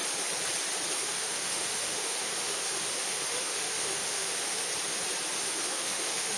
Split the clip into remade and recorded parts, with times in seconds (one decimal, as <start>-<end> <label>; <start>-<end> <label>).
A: 0.0-0.9 recorded; 0.9-4.7 remade; 4.7-5.4 recorded; 5.4-6.4 remade